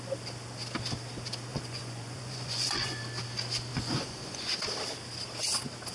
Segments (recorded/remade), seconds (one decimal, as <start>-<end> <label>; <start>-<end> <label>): 0.0-1.5 recorded; 1.5-3.0 remade; 3.0-3.7 recorded; 3.7-4.5 remade; 4.5-5.9 recorded